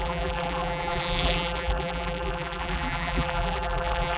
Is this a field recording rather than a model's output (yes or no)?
no